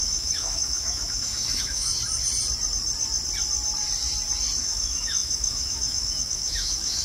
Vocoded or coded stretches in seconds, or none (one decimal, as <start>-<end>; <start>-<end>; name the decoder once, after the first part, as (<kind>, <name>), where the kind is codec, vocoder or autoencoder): 0.0-1.9 (autoencoder, DAC-VAE); 4.6-7.0